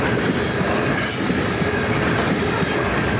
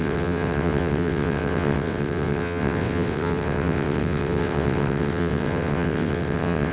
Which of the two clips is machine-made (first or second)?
second